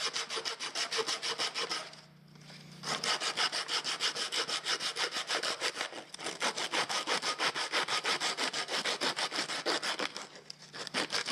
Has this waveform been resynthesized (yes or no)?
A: no